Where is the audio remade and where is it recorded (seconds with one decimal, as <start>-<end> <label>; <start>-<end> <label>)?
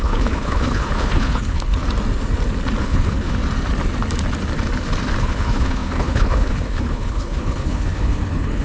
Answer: 0.0-1.7 remade; 1.7-2.8 recorded; 2.8-3.4 remade; 3.4-5.2 recorded; 5.2-8.6 remade